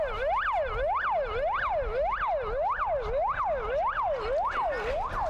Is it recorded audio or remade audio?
recorded